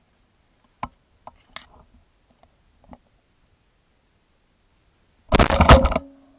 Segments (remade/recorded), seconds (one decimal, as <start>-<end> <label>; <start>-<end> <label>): 0.0-6.4 recorded